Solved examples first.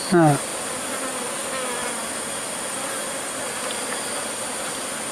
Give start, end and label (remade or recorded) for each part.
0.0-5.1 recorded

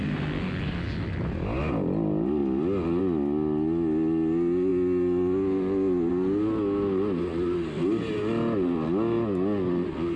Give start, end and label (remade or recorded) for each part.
0.0-10.2 recorded

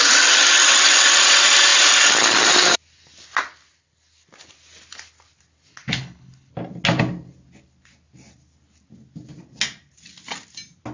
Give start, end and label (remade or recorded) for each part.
0.0-5.9 recorded; 5.9-6.5 remade; 6.5-10.9 recorded

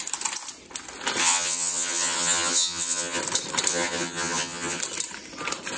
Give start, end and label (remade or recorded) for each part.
0.0-1.2 recorded; 1.2-3.2 remade; 3.2-3.7 recorded; 3.7-4.8 remade; 4.8-5.8 recorded